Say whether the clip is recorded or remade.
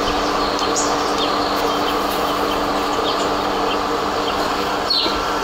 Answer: recorded